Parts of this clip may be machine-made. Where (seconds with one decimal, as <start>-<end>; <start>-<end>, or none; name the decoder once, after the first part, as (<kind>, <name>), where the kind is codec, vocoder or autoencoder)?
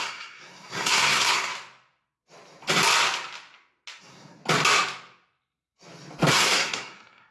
0.0-1.5 (codec, SNAC); 4.0-4.4; 6.3-7.3